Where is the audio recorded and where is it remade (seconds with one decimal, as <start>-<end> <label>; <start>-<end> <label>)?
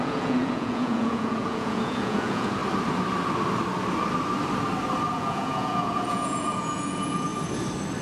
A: 0.0-2.6 remade; 2.6-5.1 recorded; 5.1-7.3 remade; 7.3-8.0 recorded